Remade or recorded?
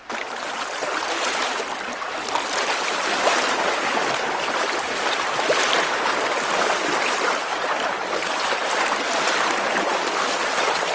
recorded